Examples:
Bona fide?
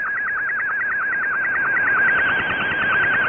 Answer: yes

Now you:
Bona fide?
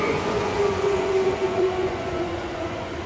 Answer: no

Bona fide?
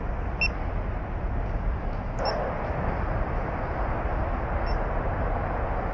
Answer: yes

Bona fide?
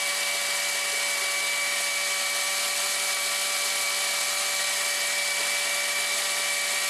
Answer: yes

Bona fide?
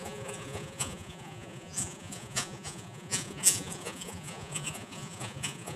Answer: no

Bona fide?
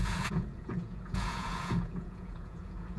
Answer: no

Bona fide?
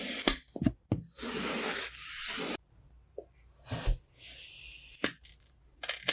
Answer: yes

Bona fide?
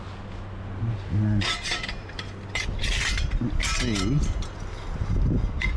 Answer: yes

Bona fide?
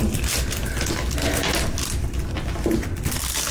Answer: yes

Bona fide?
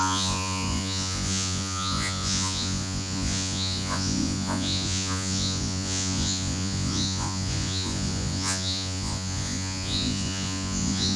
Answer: no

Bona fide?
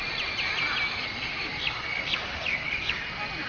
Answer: yes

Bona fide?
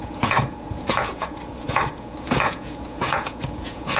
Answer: no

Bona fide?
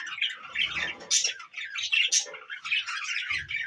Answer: yes